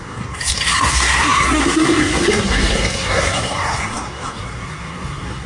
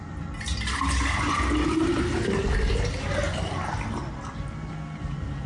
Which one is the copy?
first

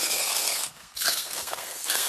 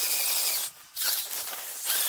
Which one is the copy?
first